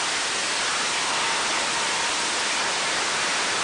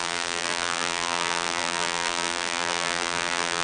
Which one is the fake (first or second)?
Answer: second